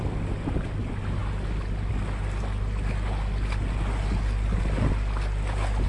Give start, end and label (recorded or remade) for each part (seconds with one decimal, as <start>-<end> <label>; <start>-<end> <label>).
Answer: 0.0-5.9 recorded